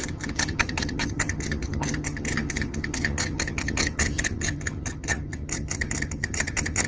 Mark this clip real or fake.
fake